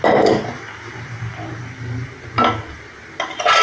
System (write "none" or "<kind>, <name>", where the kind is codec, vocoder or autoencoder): none